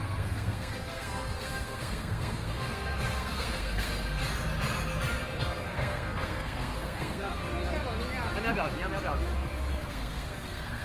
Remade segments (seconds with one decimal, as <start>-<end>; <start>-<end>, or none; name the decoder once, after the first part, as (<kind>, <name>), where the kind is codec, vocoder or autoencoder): 0.0-4.2 (codec, SNAC); 5.4-7.4; 9.7-10.8